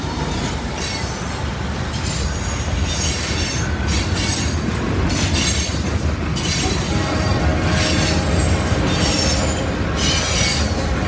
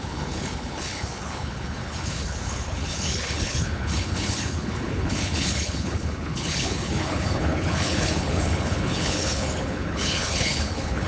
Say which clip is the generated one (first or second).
second